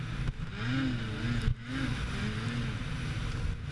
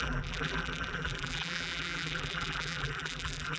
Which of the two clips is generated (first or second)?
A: second